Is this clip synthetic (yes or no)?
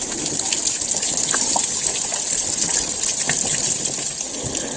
no